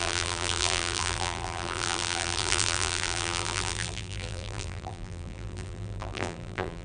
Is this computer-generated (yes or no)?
yes